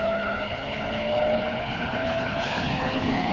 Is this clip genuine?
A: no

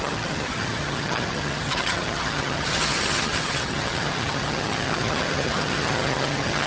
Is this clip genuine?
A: no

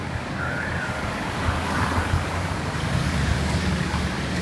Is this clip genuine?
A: no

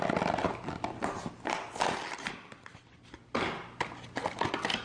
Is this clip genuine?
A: yes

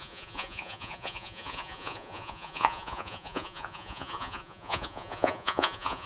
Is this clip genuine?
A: no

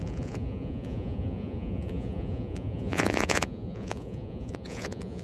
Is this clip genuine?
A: no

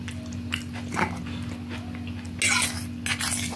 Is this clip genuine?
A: yes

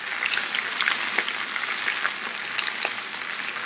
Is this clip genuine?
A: yes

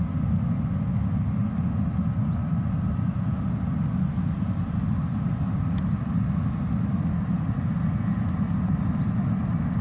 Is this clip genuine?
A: yes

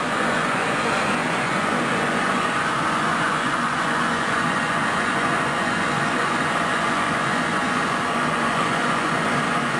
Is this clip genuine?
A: no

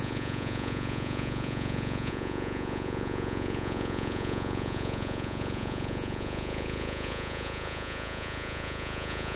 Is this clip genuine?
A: no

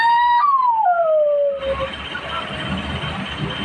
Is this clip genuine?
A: yes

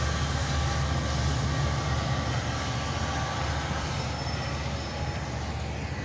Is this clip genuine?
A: yes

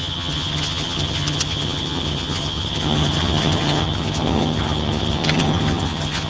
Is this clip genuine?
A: no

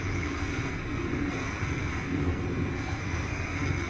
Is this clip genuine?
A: no